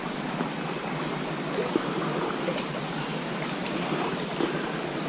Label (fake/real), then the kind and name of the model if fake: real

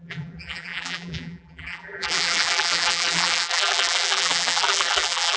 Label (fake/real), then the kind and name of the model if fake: fake, vocoder, BigVGAN v2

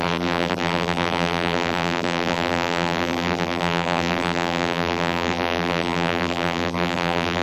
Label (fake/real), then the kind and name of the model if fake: fake, vocoder, BigVGAN v2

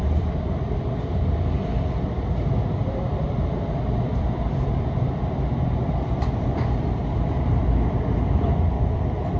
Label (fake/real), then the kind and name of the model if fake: fake, vocoder, BigVGAN v2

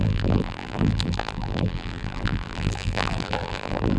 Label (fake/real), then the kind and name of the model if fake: fake, vocoder, BigVGAN v2